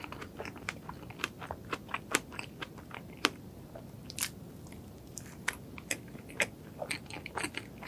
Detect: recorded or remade recorded